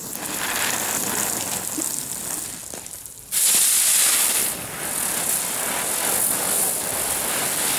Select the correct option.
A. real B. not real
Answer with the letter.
A